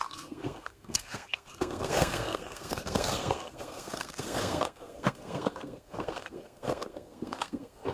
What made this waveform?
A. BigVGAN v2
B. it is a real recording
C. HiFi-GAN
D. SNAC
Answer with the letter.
D